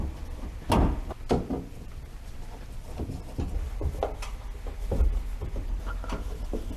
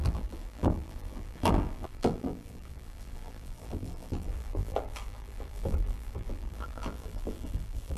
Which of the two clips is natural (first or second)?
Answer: first